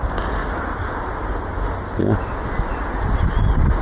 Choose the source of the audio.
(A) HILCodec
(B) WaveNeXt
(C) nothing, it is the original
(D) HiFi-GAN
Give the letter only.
C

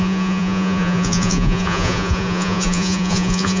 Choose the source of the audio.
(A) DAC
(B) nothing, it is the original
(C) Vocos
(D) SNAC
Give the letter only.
C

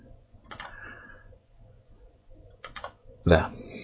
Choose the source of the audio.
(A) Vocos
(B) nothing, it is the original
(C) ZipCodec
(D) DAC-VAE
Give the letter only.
A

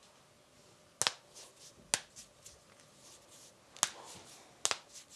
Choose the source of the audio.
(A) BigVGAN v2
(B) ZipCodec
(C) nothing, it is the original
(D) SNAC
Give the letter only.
C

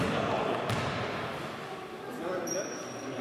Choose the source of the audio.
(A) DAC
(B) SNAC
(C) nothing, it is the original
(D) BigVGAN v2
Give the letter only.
D